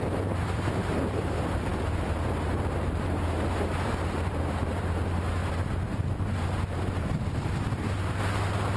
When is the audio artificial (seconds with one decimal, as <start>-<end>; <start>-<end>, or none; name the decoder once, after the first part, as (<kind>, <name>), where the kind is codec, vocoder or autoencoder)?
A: 0.0-8.8 (vocoder, BigVGAN v2)